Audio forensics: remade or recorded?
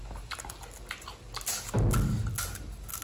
recorded